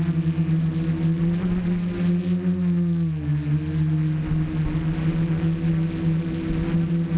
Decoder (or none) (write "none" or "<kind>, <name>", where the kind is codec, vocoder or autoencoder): none